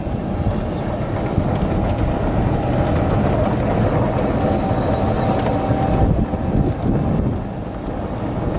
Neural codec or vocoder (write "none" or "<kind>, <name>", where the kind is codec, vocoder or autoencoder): none